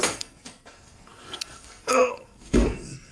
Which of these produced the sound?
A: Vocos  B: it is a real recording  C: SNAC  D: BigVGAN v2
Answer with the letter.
C